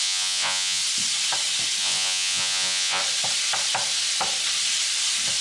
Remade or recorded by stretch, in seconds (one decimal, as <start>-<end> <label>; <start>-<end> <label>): 0.0-0.8 remade; 0.8-1.8 recorded; 1.8-3.0 remade; 3.0-5.4 recorded

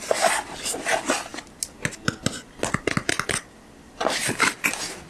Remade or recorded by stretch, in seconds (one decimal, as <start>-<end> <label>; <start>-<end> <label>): 0.0-4.2 recorded; 4.2-5.1 remade

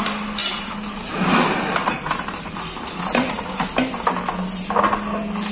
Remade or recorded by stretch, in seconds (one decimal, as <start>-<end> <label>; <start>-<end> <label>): 0.0-0.4 recorded; 0.4-3.7 remade; 3.7-5.5 recorded

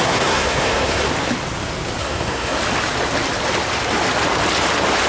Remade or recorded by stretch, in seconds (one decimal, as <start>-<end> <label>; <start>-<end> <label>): 0.0-1.1 remade; 1.1-2.0 recorded; 2.0-2.6 remade; 2.6-5.1 recorded

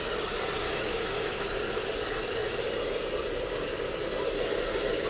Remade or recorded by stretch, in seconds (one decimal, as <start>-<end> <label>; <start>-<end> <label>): 0.0-0.6 recorded; 0.6-1.6 remade; 1.6-5.1 recorded